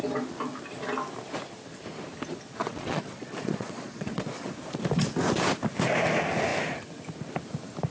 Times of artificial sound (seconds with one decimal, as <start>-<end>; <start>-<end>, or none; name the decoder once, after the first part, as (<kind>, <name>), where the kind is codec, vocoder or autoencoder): 2.6-4.5 (vocoder, Vocos)